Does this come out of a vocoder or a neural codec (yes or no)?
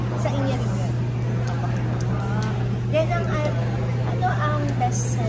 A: no